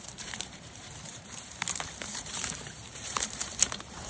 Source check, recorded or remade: remade